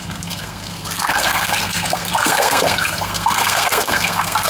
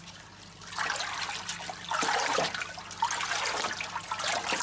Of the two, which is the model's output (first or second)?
first